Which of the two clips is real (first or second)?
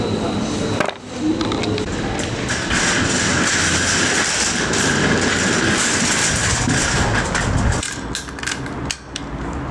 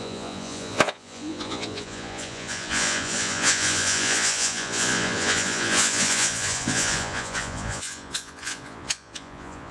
first